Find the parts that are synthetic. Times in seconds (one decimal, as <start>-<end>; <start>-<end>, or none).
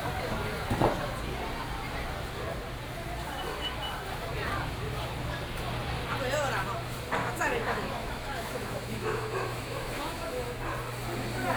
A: 7.2-10.6